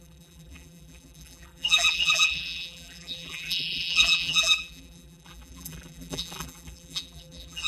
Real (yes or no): no